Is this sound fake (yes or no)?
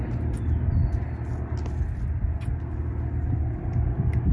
no